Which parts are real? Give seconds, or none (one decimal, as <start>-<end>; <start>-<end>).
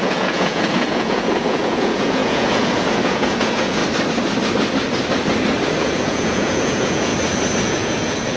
3.8-5.8; 7.1-7.6